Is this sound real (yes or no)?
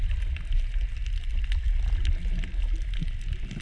yes